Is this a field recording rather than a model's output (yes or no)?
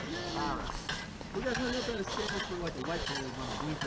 yes